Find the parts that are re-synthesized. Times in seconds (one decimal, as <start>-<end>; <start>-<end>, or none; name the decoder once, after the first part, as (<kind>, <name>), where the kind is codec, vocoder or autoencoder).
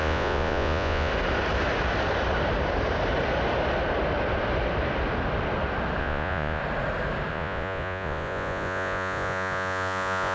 0.0-1.1 (vocoder, Vocos); 6.0-6.6; 7.3-10.3